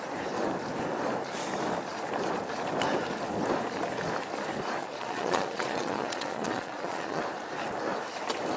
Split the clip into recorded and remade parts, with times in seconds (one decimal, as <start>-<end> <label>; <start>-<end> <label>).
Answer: 0.0-4.8 recorded; 4.8-7.2 remade; 7.2-8.6 recorded